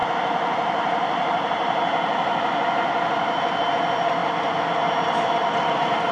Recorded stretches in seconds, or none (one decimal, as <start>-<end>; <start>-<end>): 0.0-6.1